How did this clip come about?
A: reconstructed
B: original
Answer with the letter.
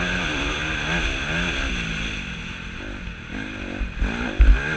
B